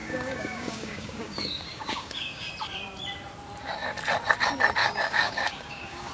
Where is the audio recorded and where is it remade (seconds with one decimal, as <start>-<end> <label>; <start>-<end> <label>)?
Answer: 0.0-2.5 remade; 2.5-4.8 recorded; 4.8-6.1 remade